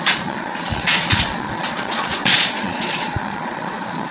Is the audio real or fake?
fake